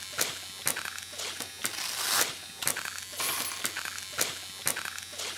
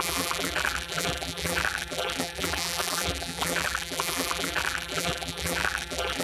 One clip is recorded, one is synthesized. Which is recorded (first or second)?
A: first